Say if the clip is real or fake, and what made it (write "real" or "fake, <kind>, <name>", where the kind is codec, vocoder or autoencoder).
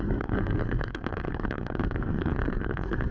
fake, codec, SNAC